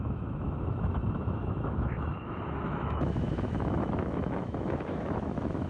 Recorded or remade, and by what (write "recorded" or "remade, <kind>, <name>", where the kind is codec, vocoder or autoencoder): remade, autoencoder, DAC-VAE